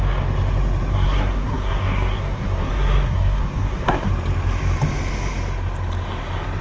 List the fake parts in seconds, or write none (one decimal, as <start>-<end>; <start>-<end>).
0.9-4.1

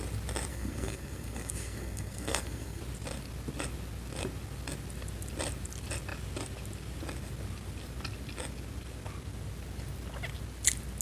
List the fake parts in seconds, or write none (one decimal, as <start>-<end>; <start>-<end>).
0.5-2.8

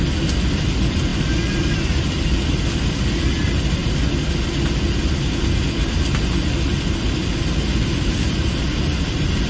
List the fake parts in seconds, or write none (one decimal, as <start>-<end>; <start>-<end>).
none

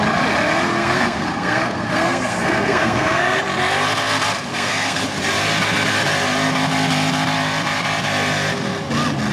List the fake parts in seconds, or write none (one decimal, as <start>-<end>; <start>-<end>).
0.8-3.4; 4.5-5.0

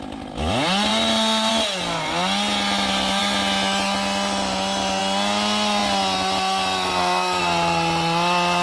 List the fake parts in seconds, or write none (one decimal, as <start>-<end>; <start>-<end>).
none

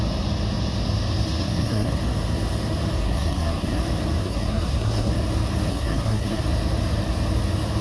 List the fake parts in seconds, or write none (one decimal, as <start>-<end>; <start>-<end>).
1.4-2.0; 3.0-3.8; 4.2-5.1; 5.7-6.4

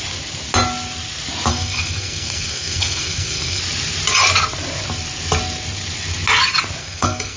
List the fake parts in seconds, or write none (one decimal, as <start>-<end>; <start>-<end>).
1.5-3.6; 6.8-7.4